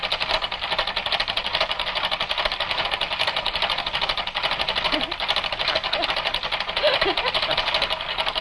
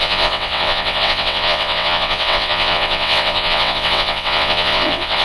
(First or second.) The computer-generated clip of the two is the second